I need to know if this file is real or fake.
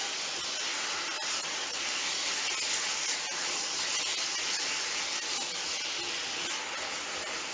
real